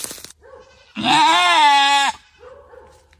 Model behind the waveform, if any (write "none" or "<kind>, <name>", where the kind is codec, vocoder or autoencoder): none